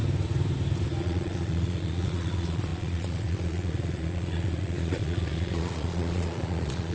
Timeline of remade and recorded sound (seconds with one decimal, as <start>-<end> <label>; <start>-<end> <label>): 0.0-1.0 recorded; 1.0-6.9 remade